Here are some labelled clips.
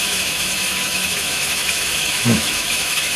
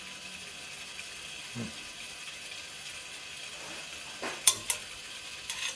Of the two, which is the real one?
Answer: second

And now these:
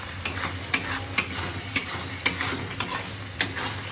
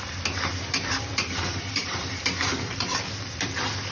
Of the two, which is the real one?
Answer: first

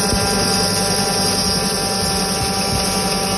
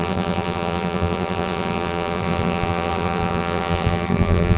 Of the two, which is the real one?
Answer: first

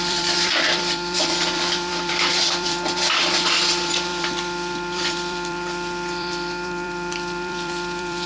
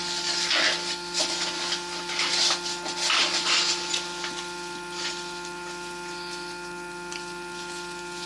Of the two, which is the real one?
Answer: second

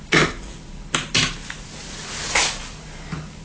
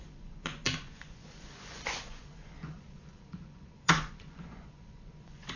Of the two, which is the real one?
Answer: first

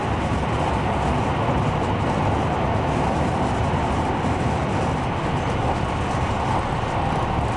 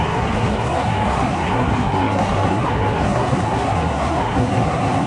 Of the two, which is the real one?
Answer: first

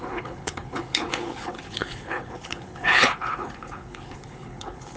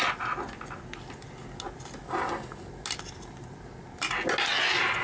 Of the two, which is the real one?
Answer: second